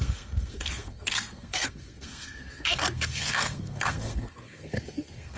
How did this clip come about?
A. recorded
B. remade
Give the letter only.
B